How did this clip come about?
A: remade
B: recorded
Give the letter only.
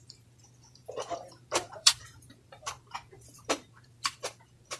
A